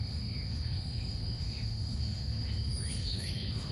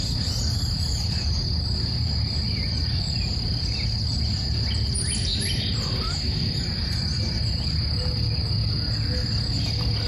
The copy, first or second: first